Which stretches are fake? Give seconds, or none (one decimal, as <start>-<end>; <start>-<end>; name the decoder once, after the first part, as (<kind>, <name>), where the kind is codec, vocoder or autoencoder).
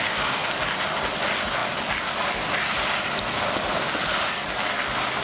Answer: none